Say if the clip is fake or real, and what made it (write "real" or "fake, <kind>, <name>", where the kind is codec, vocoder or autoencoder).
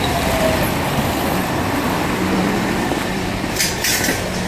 fake, vocoder, BigVGAN v2